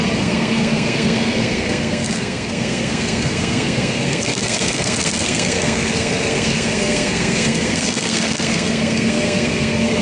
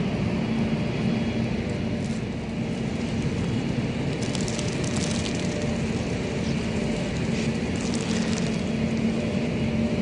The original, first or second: second